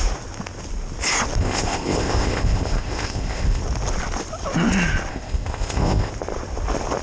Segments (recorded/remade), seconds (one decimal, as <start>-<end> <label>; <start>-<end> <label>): 0.0-1.4 recorded; 1.4-3.6 remade; 3.6-5.1 recorded; 5.1-6.1 remade; 6.1-7.0 recorded